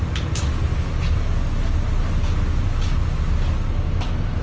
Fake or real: real